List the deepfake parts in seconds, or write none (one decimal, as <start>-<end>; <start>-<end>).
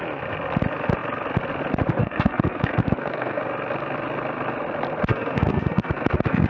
1.9-3.4; 5.1-6.5